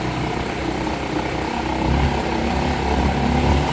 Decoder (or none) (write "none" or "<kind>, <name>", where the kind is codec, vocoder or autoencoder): none